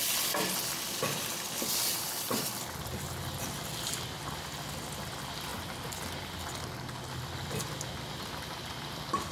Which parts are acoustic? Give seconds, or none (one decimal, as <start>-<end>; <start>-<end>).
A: 0.0-9.3